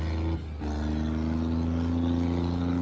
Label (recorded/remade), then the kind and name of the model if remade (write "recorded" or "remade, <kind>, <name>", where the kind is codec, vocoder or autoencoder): recorded